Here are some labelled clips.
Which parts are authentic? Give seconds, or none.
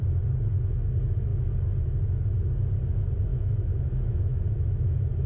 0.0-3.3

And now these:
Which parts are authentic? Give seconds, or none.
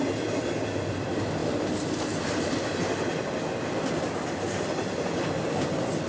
0.0-6.1